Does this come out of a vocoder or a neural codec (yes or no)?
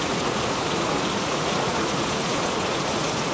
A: yes